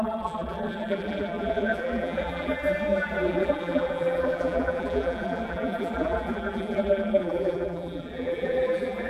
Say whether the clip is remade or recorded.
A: remade